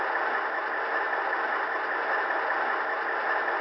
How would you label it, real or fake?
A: real